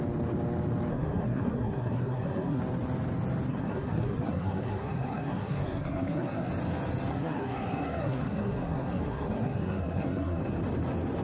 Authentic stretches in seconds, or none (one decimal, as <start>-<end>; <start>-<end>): 0.0-0.9; 2.6-3.5; 6.5-7.1; 10.4-11.2